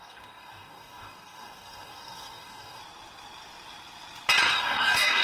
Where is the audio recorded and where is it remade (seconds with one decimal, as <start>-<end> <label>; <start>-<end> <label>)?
0.0-2.8 remade; 2.8-4.5 recorded; 4.5-5.2 remade